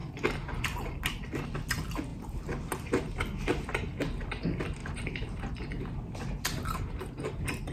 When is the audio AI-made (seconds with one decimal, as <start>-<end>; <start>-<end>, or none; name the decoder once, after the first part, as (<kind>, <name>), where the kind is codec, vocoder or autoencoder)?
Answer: 4.8-5.4 (vocoder, BigVGAN v2)